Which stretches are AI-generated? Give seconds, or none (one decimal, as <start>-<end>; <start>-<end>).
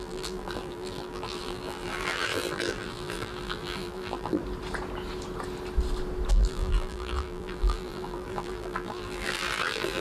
0.0-4.4; 6.3-10.0